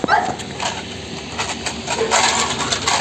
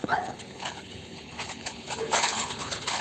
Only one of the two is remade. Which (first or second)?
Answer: second